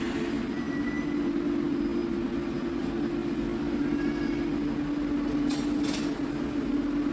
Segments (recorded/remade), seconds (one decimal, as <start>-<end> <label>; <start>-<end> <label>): 0.0-7.1 recorded